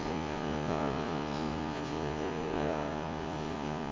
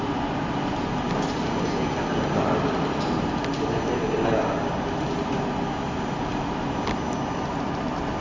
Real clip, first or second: second